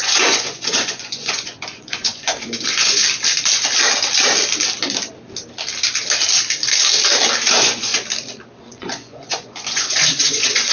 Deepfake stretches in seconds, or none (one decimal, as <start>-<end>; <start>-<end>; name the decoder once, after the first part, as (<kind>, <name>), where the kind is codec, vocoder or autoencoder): 0.0-3.0 (vocoder, Vocos); 7.5-7.9; 8.6-10.7